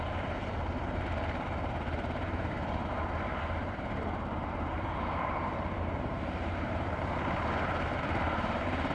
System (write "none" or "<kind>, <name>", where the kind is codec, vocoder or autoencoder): vocoder, BigVGAN v2